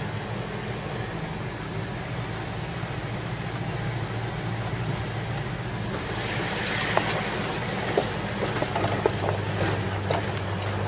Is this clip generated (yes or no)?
no